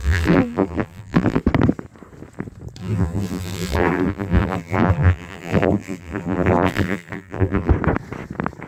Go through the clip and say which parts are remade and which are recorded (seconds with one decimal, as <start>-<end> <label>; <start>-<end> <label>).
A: 0.0-1.4 remade; 1.4-2.8 recorded; 2.8-7.7 remade; 7.7-8.7 recorded